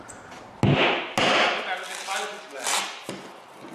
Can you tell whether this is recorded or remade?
recorded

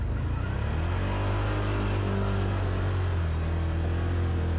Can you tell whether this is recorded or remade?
recorded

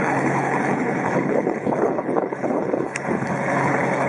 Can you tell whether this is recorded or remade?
remade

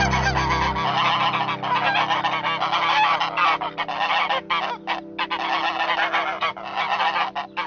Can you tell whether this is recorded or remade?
recorded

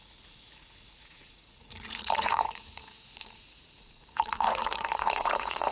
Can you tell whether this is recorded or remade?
remade